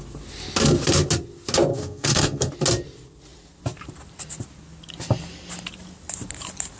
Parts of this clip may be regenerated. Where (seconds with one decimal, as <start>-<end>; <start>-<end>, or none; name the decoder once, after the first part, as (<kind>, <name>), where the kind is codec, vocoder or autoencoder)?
1.7-2.5 (codec, SNAC)